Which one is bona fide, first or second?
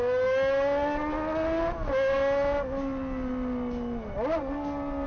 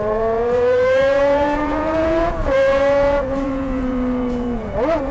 first